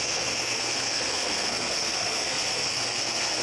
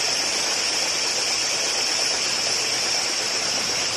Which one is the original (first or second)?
second